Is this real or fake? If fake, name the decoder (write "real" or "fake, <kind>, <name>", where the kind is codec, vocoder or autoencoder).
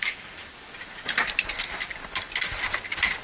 real